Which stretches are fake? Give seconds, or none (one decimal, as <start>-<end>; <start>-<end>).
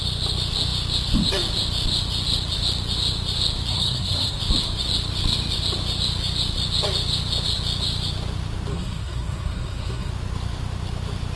3.7-4.4; 8.7-10.1